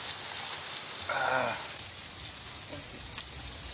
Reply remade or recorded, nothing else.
recorded